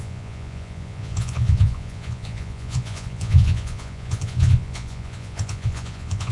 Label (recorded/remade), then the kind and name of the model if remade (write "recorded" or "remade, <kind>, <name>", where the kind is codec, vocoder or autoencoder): remade, vocoder, Vocos